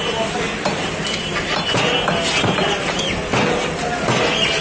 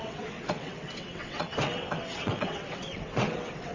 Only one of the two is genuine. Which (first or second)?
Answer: first